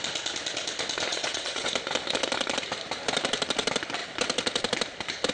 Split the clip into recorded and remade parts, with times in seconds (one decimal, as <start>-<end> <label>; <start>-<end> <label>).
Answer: 0.0-1.1 recorded; 1.1-1.7 remade; 1.7-5.3 recorded